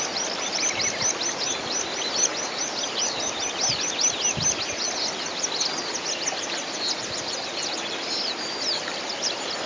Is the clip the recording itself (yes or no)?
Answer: yes